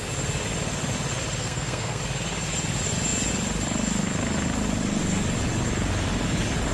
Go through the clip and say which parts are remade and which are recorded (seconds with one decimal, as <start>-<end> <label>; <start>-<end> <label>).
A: 0.0-1.4 recorded; 1.4-2.0 remade; 2.0-6.7 recorded